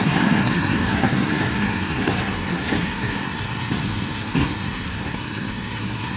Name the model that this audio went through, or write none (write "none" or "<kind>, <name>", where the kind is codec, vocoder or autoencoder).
codec, SNAC